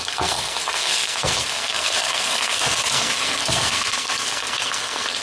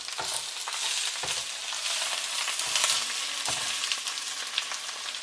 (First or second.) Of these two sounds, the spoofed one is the first